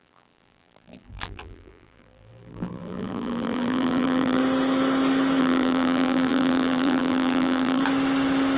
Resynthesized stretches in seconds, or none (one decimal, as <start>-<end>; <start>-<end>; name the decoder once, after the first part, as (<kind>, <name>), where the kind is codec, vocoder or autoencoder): 0.0-4.4 (vocoder, BigVGAN v2); 5.4-7.8